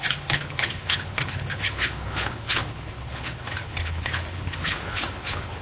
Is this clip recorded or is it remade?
remade